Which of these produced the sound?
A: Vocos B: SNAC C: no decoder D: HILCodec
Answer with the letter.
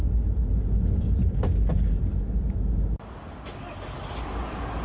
C